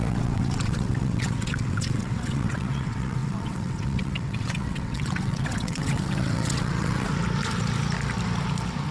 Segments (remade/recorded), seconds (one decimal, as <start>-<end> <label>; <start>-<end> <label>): 0.0-7.1 remade; 7.1-8.9 recorded

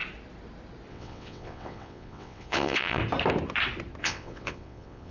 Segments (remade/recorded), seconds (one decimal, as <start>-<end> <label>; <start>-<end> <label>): 0.0-0.9 recorded; 0.9-3.0 remade; 3.0-4.0 recorded; 4.0-5.1 remade

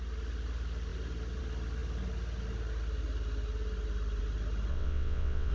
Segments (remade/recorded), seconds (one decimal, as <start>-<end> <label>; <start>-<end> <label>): 0.0-4.7 recorded; 4.7-5.5 remade

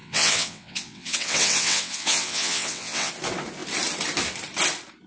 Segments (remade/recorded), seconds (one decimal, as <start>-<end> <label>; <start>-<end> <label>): 0.0-3.1 remade; 3.1-5.1 recorded